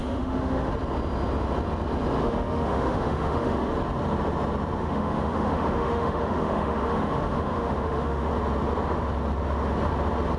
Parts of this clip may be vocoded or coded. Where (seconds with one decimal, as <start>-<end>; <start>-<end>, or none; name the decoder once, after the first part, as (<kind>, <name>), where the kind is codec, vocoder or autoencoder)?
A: 0.0-0.7 (autoencoder, DAC-VAE); 2.2-3.7; 4.8-8.3